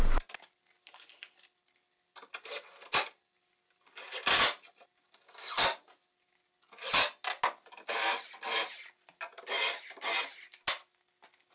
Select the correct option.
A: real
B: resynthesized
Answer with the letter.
A